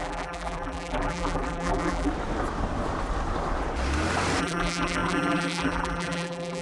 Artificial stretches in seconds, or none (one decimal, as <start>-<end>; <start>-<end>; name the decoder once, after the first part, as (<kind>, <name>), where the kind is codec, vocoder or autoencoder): 0.0-2.1 (vocoder, BigVGAN v2); 4.4-6.6

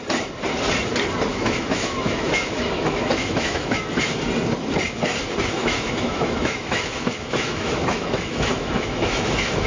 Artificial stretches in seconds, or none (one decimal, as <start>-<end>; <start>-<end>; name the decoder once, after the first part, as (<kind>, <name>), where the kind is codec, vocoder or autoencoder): 1.3-3.8 (autoencoder, DAC-VAE); 5.6-9.7